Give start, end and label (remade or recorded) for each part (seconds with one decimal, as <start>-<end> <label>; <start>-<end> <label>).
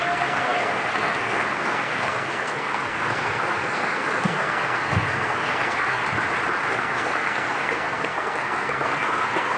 0.0-6.0 remade; 6.0-6.7 recorded; 6.7-9.6 remade